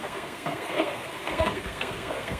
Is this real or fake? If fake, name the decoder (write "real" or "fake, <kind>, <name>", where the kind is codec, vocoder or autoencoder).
fake, codec, SNAC